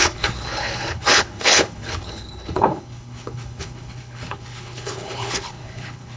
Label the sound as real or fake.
fake